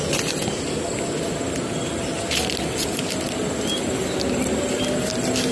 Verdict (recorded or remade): recorded